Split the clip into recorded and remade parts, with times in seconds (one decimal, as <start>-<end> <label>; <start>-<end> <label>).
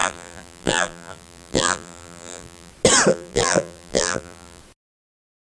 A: 0.0-2.7 remade; 2.7-3.1 recorded; 3.1-4.6 remade; 4.6-5.5 recorded